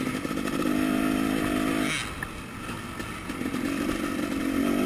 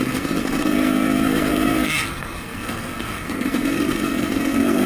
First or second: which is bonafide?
first